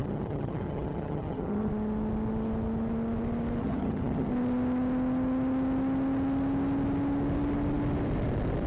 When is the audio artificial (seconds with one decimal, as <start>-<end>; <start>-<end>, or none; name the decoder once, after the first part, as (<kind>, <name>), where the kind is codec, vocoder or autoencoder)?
0.0-1.7 (vocoder, HiFi-GAN); 3.6-4.3